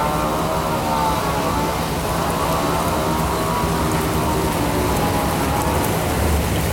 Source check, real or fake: real